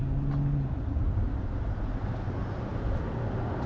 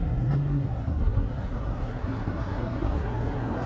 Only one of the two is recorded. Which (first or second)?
first